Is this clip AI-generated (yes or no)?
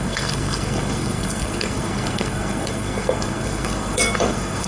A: yes